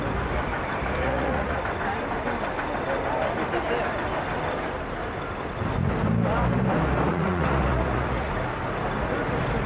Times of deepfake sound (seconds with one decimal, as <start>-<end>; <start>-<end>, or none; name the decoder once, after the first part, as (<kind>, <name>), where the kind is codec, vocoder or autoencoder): 1.0-1.6 (vocoder, Vocos); 7.1-8.3

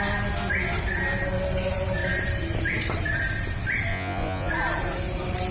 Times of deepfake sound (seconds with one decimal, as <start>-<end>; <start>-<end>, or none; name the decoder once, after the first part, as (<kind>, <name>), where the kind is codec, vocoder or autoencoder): 3.9-4.5 (vocoder, Vocos)

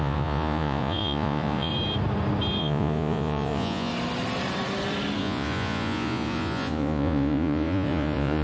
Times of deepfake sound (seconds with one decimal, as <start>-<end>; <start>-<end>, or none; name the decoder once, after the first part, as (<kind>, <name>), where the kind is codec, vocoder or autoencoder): 0.0-1.7 (vocoder, Vocos); 2.6-3.9; 5.2-8.4

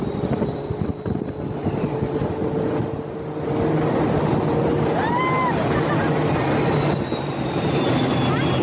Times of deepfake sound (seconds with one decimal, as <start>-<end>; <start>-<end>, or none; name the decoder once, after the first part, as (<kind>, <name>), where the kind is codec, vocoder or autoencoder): none

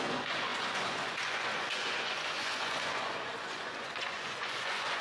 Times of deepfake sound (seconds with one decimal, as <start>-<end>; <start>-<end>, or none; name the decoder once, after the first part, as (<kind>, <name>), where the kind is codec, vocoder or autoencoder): 0.0-5.0 (vocoder, Vocos)